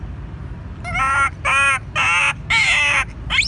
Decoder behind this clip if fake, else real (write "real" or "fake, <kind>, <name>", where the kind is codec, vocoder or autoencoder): real